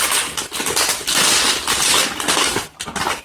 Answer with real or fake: real